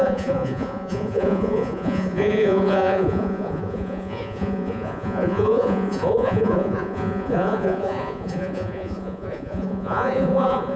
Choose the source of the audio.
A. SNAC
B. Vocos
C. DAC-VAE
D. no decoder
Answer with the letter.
B